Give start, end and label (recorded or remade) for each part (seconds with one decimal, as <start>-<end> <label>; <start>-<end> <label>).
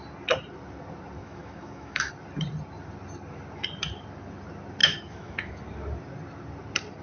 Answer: 0.0-1.2 recorded; 1.2-2.1 remade; 2.1-4.8 recorded; 4.8-5.6 remade; 5.6-7.0 recorded